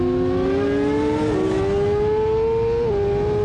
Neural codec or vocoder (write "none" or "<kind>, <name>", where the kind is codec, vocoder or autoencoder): none